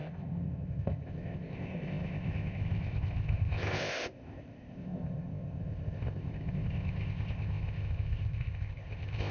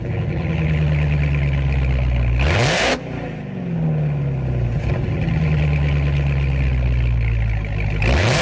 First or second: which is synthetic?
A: first